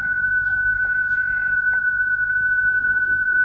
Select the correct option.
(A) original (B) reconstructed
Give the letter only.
B